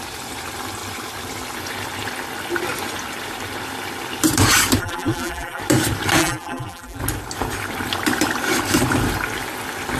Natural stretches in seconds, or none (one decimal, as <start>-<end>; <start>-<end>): 0.0-4.8; 5.6-6.2; 7.0-10.0